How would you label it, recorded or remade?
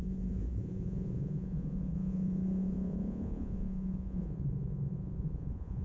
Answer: remade